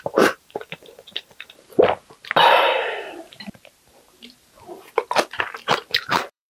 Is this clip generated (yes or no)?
yes